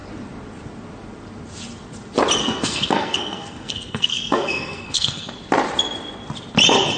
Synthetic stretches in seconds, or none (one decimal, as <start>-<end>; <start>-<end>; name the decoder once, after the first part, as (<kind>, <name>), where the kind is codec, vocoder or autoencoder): 2.4-5.3 (codec, SNAC)